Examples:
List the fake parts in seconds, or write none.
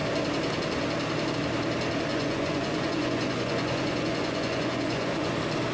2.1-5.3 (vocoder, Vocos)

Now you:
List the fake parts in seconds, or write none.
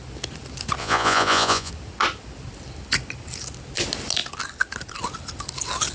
0.8-1.7 (vocoder, Vocos)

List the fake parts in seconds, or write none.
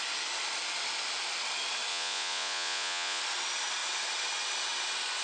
1.9-3.2 (vocoder, Vocos)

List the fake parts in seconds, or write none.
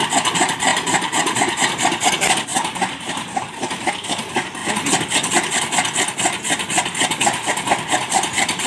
0.7-2.1 (vocoder, BigVGAN v2); 2.5-3.9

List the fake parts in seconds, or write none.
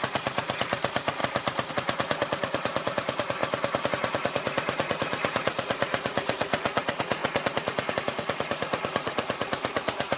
0.0-1.2 (vocoder, Vocos); 1.7-3.4; 3.9-10.2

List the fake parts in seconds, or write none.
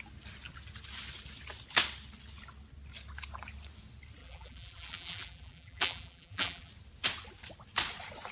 4.2-6.7 (vocoder, BigVGAN v2)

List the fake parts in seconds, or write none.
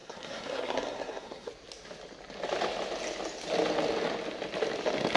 0.0-1.5 (codec, SNAC)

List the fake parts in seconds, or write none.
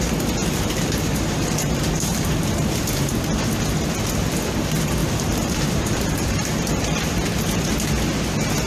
0.4-3.2 (vocoder, BigVGAN v2); 5.0-7.1